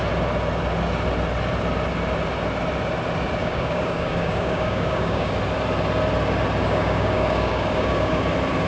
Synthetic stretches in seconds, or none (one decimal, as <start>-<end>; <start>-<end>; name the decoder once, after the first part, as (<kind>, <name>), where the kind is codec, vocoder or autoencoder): 3.4-5.3 (codec, DAC); 6.6-8.2